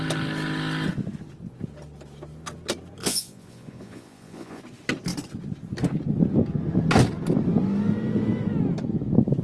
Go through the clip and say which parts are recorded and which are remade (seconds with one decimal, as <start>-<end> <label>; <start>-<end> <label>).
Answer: 0.0-3.0 recorded; 3.0-4.6 remade; 4.6-9.4 recorded